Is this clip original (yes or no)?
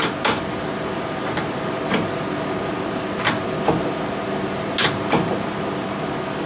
yes